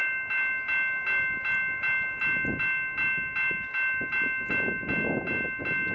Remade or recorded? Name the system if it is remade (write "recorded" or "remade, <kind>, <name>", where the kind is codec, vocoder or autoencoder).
recorded